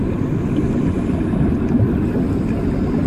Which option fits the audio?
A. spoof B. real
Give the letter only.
B